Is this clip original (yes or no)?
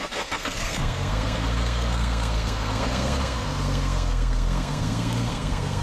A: no